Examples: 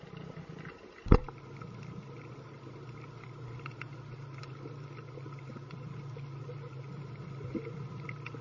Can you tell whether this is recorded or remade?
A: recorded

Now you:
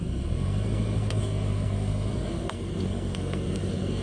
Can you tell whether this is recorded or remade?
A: remade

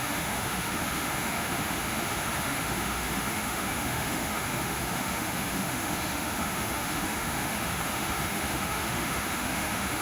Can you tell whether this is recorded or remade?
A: remade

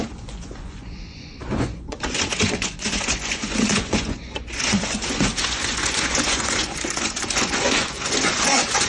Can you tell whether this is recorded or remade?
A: remade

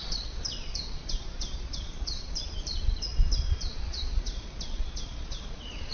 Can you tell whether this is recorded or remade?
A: remade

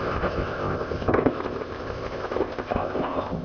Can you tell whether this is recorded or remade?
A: remade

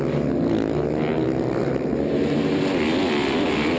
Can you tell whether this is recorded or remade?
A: recorded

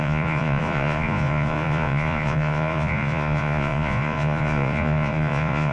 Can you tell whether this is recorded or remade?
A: remade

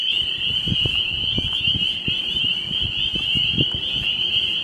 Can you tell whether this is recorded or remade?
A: recorded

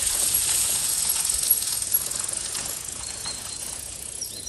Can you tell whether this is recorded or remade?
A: remade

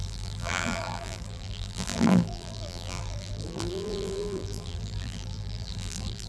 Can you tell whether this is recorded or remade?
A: remade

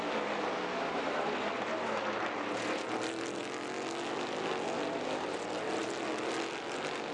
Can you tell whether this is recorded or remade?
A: recorded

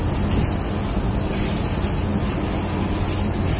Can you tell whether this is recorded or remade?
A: recorded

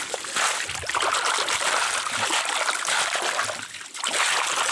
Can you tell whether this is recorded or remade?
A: recorded